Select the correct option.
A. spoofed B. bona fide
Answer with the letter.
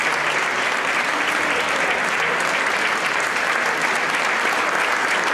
B